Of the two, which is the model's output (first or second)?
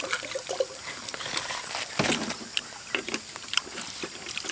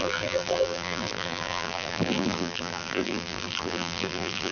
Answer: second